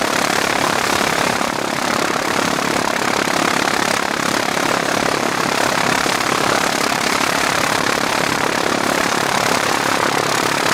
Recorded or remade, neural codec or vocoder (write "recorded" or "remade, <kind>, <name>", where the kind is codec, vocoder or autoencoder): remade, vocoder, BigVGAN v2